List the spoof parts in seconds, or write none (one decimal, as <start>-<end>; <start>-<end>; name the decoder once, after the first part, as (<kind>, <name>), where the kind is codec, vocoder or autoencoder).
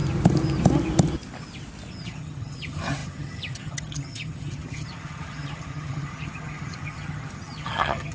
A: 1.9-8.1 (vocoder, HiFi-GAN)